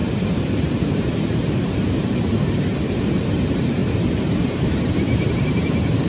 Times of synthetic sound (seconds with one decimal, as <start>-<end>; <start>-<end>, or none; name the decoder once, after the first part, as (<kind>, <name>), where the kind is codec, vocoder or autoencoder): 0.0-6.1 (vocoder, BigVGAN v2)